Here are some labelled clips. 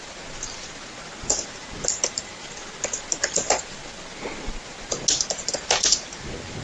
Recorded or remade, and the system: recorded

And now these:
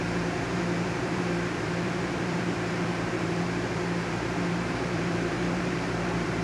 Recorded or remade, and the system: remade, vocoder, BigVGAN v2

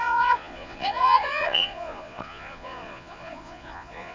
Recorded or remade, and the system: remade, vocoder, Vocos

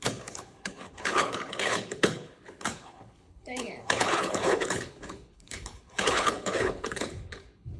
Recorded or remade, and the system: remade, codec, HILCodec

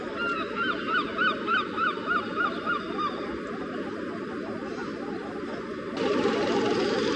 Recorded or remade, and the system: recorded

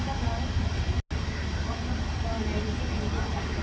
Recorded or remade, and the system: recorded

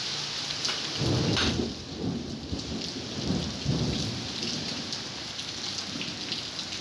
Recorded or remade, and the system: recorded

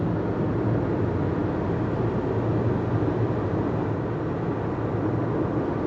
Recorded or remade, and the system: recorded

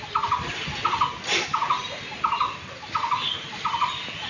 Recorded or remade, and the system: recorded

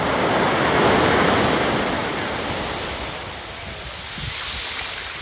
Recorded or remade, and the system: recorded